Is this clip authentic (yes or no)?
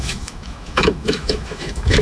no